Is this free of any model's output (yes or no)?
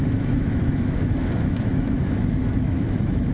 no